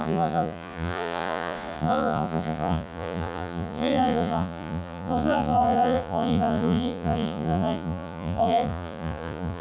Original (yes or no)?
no